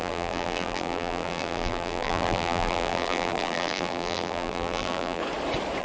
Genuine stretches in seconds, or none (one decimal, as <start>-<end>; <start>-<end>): 5.2-5.8